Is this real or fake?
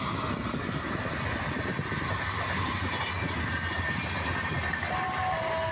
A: real